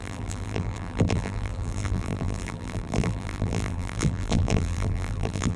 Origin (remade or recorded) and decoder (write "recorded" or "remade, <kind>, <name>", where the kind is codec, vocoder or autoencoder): remade, vocoder, BigVGAN v2